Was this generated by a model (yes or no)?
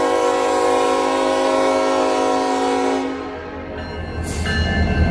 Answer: no